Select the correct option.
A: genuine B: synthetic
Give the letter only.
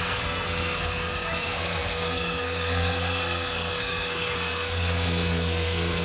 B